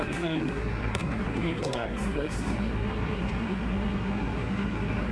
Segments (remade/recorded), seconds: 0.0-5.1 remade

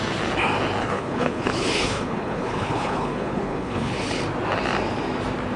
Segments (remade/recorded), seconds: 0.0-0.8 recorded; 0.8-4.2 remade; 4.2-5.6 recorded

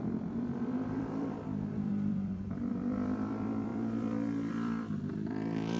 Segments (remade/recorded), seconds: 0.0-5.8 remade

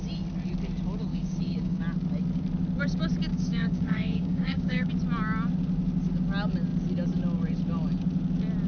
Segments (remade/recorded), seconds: 0.0-1.1 recorded; 1.1-1.8 remade; 1.8-3.3 recorded; 3.3-4.9 remade; 4.9-8.7 recorded

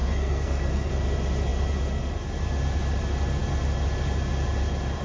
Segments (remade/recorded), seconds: 0.0-0.9 remade; 0.9-5.0 recorded